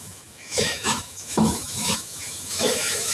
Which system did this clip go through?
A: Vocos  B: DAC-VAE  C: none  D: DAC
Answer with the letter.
B